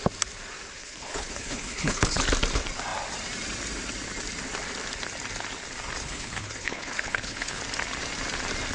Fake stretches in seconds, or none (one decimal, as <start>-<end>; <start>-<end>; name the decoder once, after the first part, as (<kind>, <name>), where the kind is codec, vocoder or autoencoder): 0.8-2.2 (codec, HILCodec); 6.0-7.6